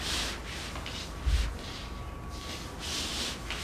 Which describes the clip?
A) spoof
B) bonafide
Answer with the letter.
B